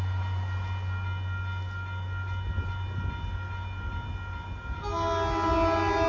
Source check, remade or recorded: recorded